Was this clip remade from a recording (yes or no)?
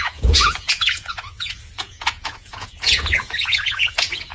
yes